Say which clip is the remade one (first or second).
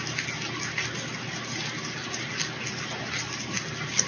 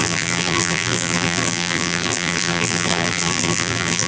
second